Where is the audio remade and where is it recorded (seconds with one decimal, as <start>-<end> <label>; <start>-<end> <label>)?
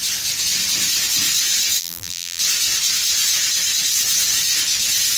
0.0-1.8 recorded; 1.8-2.4 remade; 2.4-5.2 recorded